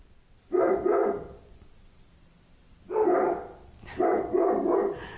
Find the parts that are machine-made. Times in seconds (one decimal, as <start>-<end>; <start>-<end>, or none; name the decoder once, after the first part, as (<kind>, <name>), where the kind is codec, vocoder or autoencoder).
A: none